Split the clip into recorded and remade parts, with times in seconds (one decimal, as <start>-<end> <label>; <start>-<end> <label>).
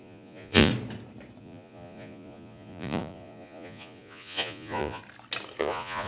0.0-0.7 remade; 0.7-1.4 recorded; 1.4-5.0 remade; 5.0-5.6 recorded; 5.6-6.1 remade